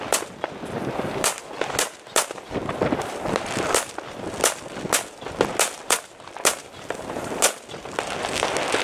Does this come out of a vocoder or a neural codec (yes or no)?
no